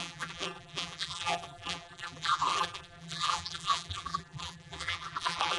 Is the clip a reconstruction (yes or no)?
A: yes